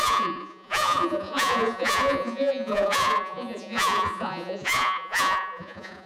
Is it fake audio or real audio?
fake